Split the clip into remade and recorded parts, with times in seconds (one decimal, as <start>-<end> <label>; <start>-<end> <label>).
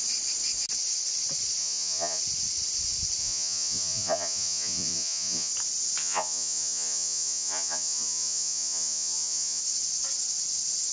0.0-1.6 recorded; 1.6-2.2 remade; 2.2-3.2 recorded; 3.2-5.5 remade; 5.5-6.0 recorded; 6.0-9.6 remade; 9.6-10.9 recorded